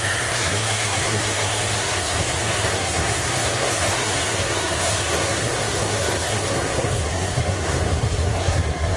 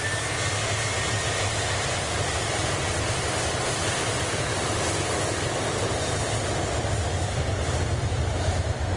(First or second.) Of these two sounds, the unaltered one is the second